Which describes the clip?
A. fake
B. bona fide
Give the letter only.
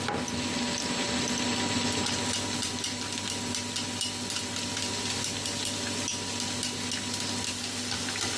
B